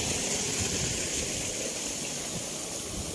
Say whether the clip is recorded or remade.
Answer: recorded